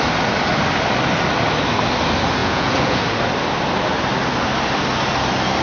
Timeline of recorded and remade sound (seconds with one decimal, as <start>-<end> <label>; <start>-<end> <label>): 0.0-2.4 recorded; 2.4-3.0 remade; 3.0-5.6 recorded